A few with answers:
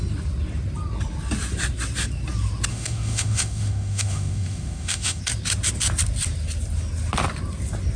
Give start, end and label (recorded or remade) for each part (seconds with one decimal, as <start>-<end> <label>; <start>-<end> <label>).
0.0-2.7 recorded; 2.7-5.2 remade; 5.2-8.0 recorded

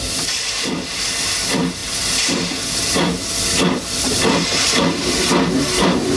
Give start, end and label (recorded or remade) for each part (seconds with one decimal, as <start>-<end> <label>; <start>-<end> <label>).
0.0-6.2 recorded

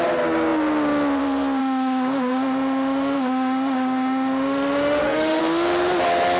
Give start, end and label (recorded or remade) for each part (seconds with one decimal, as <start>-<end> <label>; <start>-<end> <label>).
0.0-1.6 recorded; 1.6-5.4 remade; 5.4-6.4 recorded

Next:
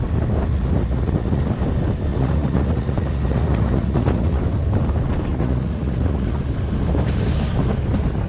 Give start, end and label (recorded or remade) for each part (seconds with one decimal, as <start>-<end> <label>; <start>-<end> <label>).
0.0-0.5 recorded; 0.5-1.4 remade; 1.4-2.1 recorded; 2.1-4.4 remade; 4.4-5.3 recorded; 5.3-6.4 remade; 6.4-8.3 recorded